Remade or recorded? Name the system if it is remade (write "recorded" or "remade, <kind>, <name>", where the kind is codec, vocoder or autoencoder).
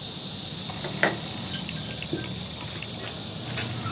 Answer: recorded